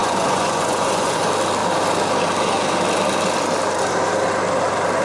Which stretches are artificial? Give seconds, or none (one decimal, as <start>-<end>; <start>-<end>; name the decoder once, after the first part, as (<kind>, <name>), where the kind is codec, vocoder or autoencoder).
0.0-1.2 (vocoder, Vocos)